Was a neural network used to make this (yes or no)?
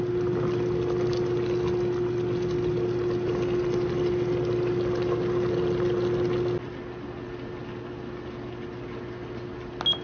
no